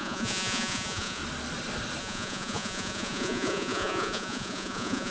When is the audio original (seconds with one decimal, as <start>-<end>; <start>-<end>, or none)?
1.2-2.0